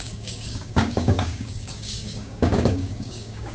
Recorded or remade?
remade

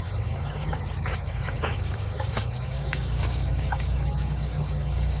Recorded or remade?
remade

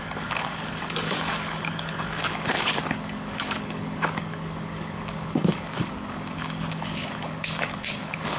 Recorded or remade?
remade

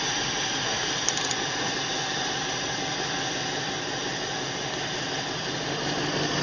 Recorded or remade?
recorded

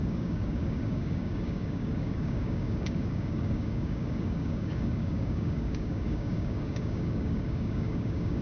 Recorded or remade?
remade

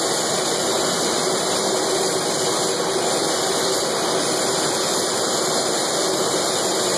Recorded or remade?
recorded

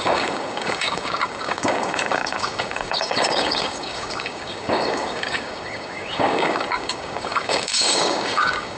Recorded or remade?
remade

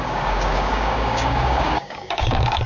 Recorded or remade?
remade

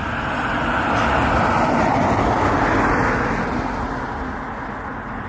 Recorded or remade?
recorded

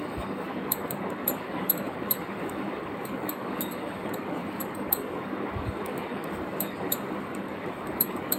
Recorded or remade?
remade